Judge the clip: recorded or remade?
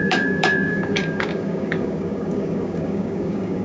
remade